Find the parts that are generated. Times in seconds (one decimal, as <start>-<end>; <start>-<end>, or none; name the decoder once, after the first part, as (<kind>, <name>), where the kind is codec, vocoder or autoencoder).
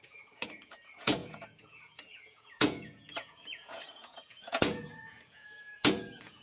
0.0-6.4 (vocoder, Vocos)